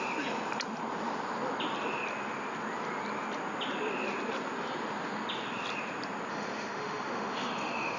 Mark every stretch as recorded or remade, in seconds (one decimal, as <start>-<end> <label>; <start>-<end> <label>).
0.0-6.3 recorded; 6.3-8.0 remade